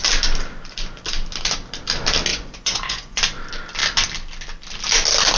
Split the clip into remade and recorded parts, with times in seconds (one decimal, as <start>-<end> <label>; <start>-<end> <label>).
0.0-2.3 recorded; 2.3-3.2 remade; 3.2-5.4 recorded